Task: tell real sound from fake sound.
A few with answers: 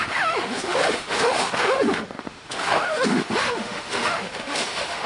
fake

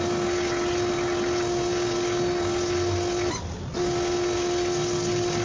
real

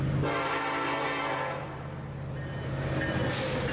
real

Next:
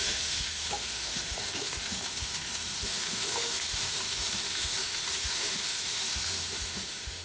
fake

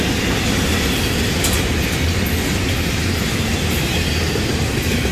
real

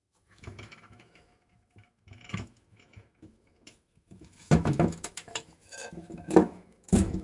fake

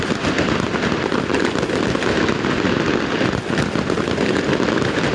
real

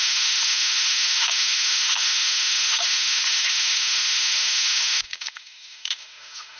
fake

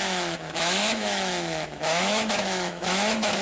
fake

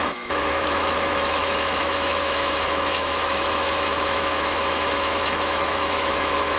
fake